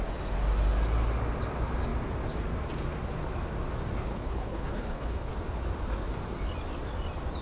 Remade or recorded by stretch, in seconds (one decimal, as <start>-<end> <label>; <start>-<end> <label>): 0.0-4.1 recorded; 4.1-5.3 remade; 5.3-7.4 recorded